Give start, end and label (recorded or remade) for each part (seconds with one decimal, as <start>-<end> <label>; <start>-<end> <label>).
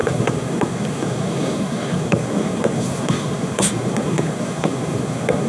0.0-5.5 remade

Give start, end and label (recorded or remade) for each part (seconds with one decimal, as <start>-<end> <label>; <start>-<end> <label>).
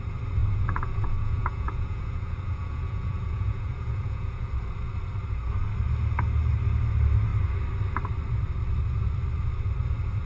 0.0-0.4 recorded; 0.4-4.5 remade; 4.5-10.3 recorded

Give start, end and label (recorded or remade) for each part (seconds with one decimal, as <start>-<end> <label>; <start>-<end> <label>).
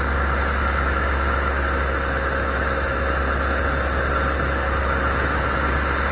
0.0-0.4 recorded; 0.4-3.1 remade; 3.1-4.8 recorded; 4.8-5.4 remade; 5.4-6.1 recorded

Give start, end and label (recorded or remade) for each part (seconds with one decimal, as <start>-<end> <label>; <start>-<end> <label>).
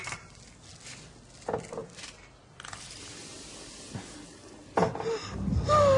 0.0-1.8 recorded; 1.8-2.3 remade; 2.3-6.0 recorded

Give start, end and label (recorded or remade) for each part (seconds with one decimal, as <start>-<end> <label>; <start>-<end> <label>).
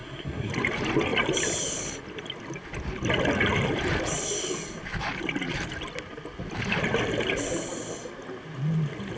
0.0-0.5 remade; 0.5-9.2 recorded